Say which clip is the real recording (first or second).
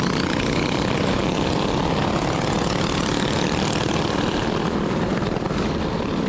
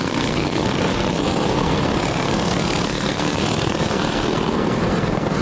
first